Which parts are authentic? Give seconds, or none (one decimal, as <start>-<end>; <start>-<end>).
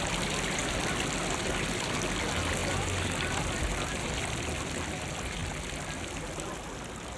0.0-7.2